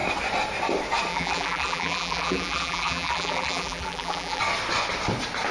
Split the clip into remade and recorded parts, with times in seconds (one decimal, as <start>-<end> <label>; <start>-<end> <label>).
0.0-1.1 recorded; 1.1-4.4 remade; 4.4-5.5 recorded